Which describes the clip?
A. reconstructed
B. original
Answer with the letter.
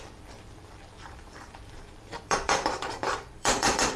A